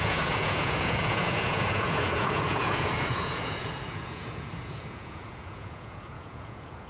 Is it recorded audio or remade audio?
remade